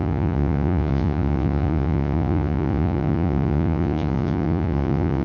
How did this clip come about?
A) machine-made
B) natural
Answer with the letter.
A